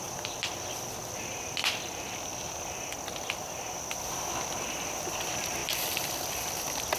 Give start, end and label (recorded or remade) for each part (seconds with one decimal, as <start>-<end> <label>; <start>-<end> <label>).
0.0-7.0 remade